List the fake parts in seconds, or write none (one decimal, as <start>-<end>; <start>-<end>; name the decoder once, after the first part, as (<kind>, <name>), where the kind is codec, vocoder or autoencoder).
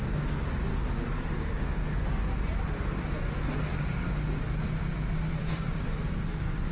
0.0-0.7 (codec, DAC); 1.3-2.3; 6.3-6.7